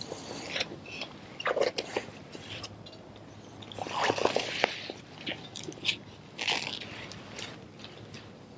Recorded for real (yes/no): yes